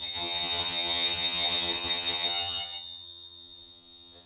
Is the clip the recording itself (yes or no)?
no